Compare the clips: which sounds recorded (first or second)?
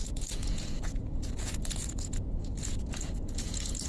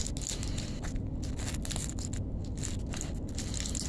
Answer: second